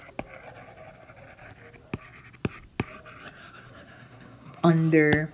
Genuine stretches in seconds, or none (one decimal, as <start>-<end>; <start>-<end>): 0.0-3.4; 4.7-5.3